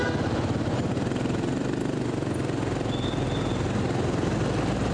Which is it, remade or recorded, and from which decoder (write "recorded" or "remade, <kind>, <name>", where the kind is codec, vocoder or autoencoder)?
recorded